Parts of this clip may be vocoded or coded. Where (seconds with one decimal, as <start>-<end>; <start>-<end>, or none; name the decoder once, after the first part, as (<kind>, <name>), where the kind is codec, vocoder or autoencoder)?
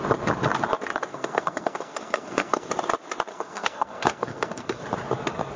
1.1-2.7 (codec, SNAC); 3.3-4.8